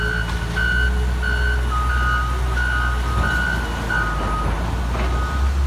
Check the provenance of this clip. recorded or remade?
recorded